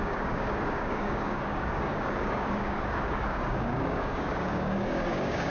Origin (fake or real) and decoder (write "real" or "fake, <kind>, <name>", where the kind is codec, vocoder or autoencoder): fake, codec, DAC